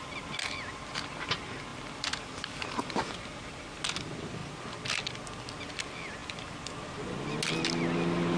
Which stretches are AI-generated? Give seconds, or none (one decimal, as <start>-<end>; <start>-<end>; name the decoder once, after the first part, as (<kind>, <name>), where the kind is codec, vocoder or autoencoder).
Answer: 1.7-3.1 (vocoder, BigVGAN v2)